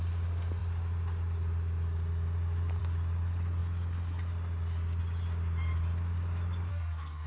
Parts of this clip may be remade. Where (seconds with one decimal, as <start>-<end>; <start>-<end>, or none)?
6.7-7.3